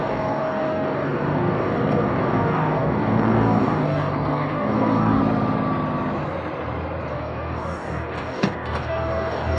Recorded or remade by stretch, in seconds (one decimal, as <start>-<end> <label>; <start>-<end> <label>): 0.0-5.2 remade; 5.2-7.1 recorded; 7.1-9.6 remade